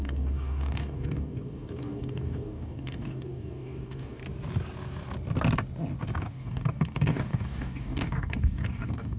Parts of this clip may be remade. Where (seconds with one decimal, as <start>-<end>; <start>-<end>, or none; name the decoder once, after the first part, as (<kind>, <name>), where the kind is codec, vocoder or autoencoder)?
0.0-4.2 (codec, DAC); 6.2-9.2